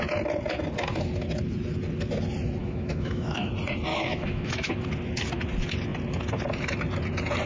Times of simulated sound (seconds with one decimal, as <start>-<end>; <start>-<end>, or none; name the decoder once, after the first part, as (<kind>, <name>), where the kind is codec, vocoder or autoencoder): 2.6-3.5 (autoencoder, DAC-VAE); 3.9-4.7